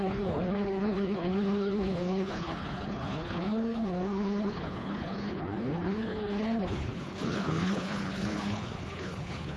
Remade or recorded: remade